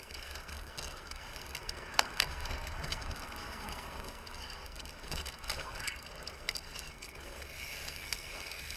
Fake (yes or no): yes